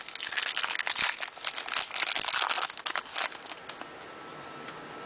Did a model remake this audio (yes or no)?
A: no